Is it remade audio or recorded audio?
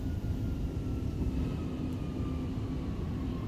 recorded